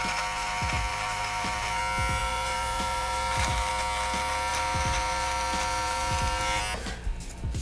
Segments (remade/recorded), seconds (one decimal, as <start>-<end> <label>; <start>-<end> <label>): 0.0-0.9 recorded; 0.9-1.8 remade; 1.8-2.2 recorded; 2.2-3.7 remade; 3.7-4.5 recorded; 4.5-6.6 remade; 6.6-7.6 recorded

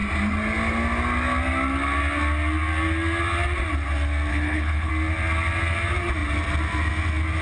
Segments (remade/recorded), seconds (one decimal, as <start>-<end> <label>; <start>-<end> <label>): 0.0-4.3 recorded; 4.3-4.9 remade; 4.9-7.4 recorded

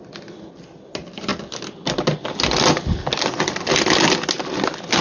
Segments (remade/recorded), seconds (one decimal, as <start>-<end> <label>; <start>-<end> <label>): 0.0-5.0 recorded

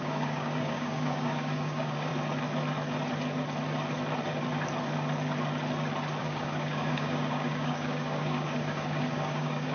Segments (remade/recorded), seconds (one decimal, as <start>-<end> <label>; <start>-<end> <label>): 0.0-2.1 remade; 2.1-6.2 recorded; 6.2-9.7 remade